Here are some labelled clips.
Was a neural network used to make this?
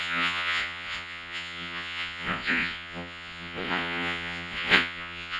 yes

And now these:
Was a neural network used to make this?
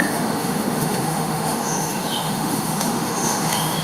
yes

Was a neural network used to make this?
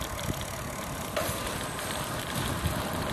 no